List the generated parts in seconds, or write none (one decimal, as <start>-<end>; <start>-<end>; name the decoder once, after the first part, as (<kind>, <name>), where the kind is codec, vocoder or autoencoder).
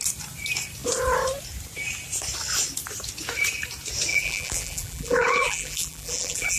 4.1-6.6 (vocoder, BigVGAN v2)